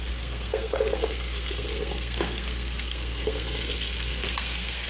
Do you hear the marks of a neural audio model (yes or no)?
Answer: yes